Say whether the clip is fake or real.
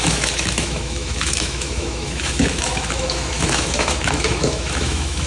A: fake